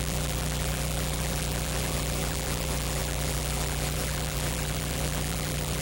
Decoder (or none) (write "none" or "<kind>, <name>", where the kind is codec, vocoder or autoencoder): vocoder, BigVGAN v2